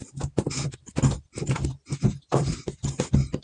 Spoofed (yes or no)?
yes